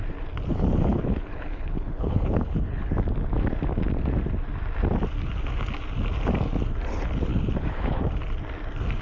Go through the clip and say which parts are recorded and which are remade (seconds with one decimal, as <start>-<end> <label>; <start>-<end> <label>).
0.0-0.9 recorded; 0.9-2.9 remade; 2.9-7.3 recorded; 7.3-8.0 remade; 8.0-9.0 recorded